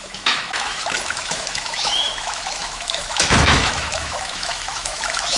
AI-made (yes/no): yes